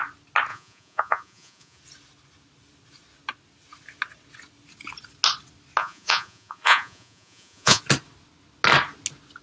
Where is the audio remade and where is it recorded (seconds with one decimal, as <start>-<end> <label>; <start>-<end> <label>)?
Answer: 0.0-0.5 recorded; 0.5-1.8 remade; 1.8-5.8 recorded; 5.8-7.8 remade; 7.8-9.4 recorded